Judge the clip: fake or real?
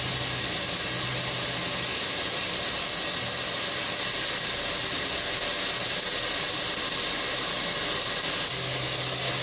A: real